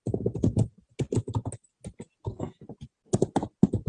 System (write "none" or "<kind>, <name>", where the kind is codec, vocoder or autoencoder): none